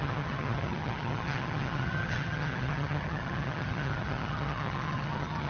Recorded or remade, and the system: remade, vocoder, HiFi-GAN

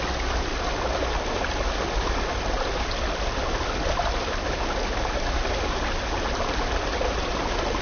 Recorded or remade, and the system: recorded